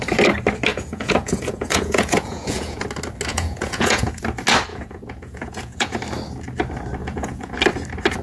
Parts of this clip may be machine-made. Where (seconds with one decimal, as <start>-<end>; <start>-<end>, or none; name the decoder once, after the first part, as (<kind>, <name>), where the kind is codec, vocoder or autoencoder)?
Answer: 0.7-2.8 (vocoder, Vocos); 3.3-4.2; 4.7-6.0; 7.0-7.6